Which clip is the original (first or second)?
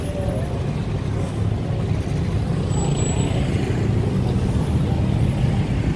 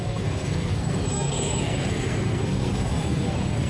first